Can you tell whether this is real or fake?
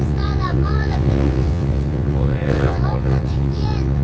fake